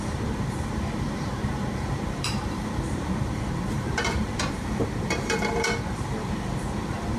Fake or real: fake